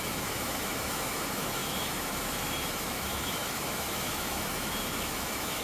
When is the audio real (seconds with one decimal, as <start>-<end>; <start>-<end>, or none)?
none